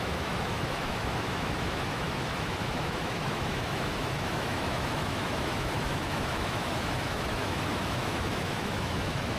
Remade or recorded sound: remade